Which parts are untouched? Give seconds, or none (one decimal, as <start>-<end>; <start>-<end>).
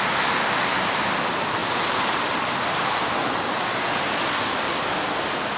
0.0-5.6